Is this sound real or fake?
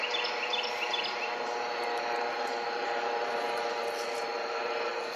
real